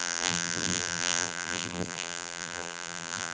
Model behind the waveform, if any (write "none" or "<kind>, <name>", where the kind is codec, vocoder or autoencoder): vocoder, BigVGAN v2